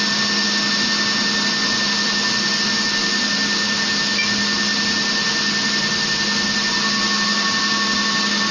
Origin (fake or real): real